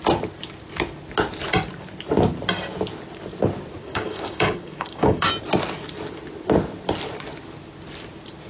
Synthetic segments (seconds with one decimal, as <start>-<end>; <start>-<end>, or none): 3.8-5.3